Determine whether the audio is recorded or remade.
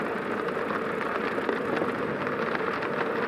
recorded